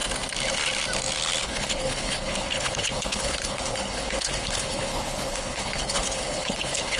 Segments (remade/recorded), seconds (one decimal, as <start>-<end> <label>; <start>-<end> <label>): 0.0-1.4 recorded; 1.4-7.0 remade